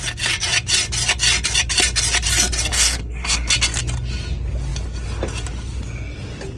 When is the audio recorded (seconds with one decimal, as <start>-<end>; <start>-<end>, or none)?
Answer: 0.0-2.7; 3.5-6.6